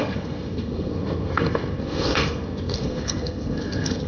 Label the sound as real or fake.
fake